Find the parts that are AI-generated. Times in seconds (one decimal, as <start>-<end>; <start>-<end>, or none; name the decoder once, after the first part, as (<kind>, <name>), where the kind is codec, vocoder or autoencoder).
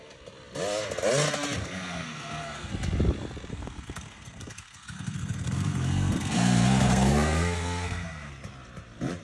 1.6-2.7 (codec, SNAC); 3.5-8.3